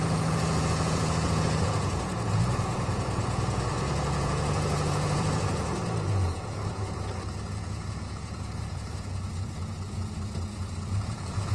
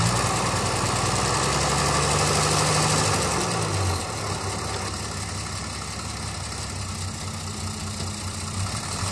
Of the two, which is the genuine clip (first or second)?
second